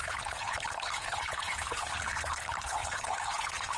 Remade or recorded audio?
remade